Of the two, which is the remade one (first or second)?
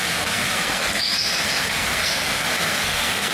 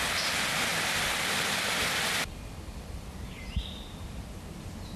first